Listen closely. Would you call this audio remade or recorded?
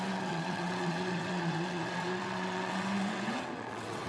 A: remade